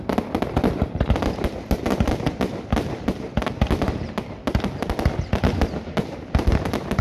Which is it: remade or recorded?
recorded